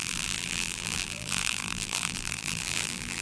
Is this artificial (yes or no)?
yes